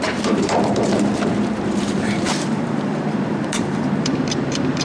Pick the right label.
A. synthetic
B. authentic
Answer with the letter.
A